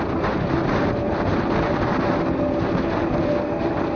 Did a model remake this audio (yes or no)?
no